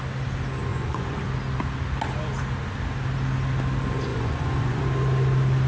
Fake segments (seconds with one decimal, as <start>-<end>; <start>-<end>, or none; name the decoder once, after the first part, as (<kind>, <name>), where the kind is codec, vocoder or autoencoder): 0.7-1.2 (vocoder, Vocos); 4.1-4.8